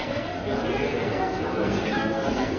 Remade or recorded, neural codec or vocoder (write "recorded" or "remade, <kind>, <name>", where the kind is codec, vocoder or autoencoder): remade, codec, SNAC